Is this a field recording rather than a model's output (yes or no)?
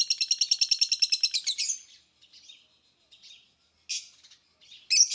yes